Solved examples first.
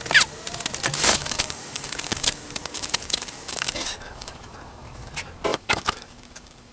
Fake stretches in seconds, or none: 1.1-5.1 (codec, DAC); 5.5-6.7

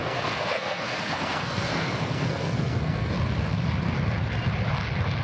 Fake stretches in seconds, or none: 0.0-3.1 (codec, SNAC)

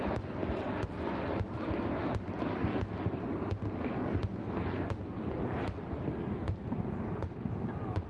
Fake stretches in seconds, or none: none

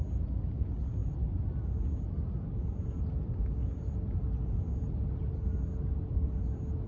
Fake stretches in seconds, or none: none

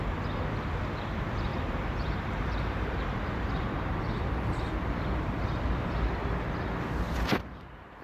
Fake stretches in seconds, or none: 1.5-3.0 (vocoder, BigVGAN v2)

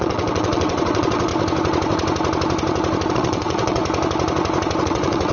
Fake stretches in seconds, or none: 0.0-1.3 (vocoder, WaveNeXt); 3.1-3.8; 4.8-5.3